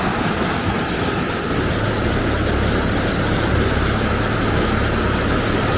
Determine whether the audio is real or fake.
real